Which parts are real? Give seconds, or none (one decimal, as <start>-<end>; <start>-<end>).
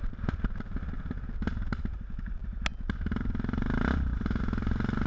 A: 0.0-5.1